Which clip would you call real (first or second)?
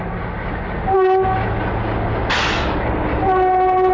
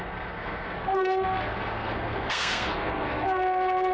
first